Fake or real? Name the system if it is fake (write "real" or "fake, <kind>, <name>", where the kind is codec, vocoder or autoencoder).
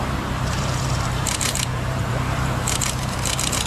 fake, vocoder, BigVGAN v2